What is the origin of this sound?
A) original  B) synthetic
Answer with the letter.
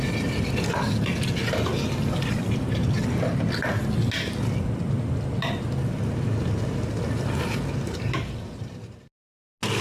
A